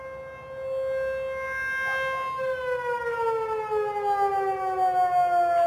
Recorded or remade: recorded